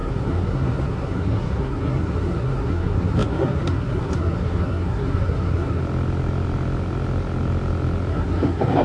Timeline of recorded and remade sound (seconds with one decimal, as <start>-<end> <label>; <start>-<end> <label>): 0.0-5.8 remade; 5.8-8.1 recorded; 8.1-8.8 remade

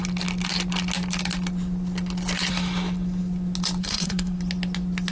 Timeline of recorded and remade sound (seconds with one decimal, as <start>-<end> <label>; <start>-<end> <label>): 0.0-3.8 recorded; 3.8-4.4 remade; 4.4-5.1 recorded

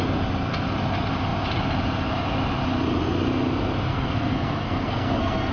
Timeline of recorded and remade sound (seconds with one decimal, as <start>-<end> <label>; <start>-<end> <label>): 0.0-3.9 recorded; 3.9-5.5 remade

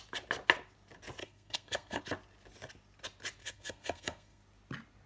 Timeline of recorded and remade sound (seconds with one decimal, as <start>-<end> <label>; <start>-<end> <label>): 0.0-1.2 recorded; 1.2-2.0 remade; 2.0-3.4 recorded; 3.4-4.4 remade; 4.4-5.1 recorded

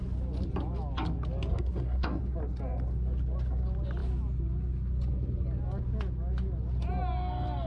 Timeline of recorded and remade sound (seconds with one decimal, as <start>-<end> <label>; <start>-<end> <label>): 0.0-1.5 recorded; 1.5-2.2 remade; 2.2-7.7 recorded

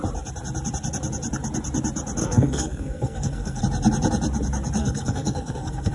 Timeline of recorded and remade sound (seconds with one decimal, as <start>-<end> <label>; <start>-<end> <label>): 0.0-2.2 recorded; 2.2-3.6 remade; 3.6-4.8 recorded; 4.8-5.9 remade

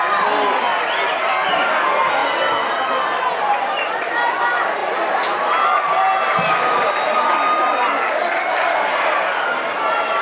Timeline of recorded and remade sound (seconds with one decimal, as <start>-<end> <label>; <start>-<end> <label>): 0.0-10.2 recorded